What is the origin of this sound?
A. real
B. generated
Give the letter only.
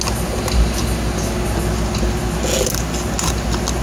A